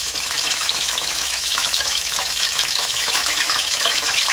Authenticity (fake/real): fake